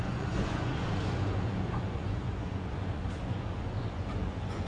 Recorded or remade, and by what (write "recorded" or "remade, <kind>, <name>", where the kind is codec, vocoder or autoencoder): remade, vocoder, Vocos